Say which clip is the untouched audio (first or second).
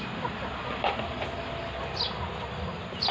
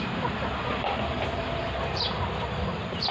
first